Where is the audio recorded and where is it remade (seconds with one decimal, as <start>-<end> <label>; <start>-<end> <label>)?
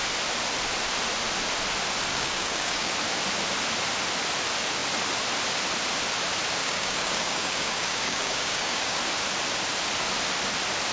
0.0-2.1 recorded; 2.1-2.9 remade; 2.9-6.6 recorded; 6.6-9.0 remade; 9.0-10.9 recorded